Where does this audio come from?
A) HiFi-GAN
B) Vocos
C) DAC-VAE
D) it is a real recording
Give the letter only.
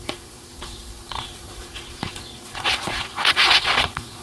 B